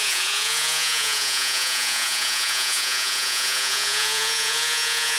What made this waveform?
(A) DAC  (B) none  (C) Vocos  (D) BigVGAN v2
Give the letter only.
C